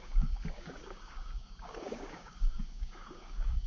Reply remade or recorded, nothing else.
remade